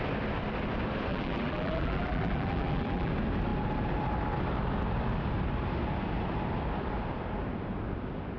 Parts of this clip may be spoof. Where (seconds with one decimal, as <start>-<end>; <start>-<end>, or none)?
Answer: 1.1-3.1

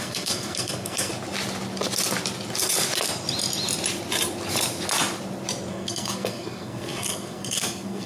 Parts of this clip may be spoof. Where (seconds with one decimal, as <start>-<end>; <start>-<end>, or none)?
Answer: 0.0-1.1; 5.7-8.1

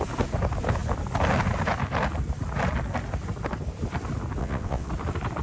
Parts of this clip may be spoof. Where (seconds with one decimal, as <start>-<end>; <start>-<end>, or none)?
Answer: 4.4-4.9

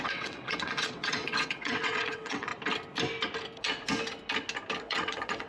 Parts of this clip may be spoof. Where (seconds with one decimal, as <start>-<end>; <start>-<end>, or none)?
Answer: 0.0-2.5; 4.8-5.5

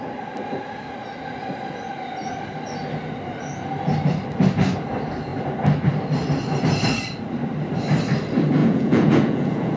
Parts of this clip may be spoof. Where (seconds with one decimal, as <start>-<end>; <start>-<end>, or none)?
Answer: 8.6-9.8

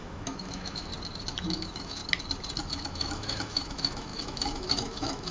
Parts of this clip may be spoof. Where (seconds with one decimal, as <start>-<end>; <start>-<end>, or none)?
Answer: 0.0-0.9; 1.4-2.0; 2.7-5.3